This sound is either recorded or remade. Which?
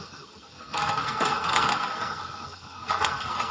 remade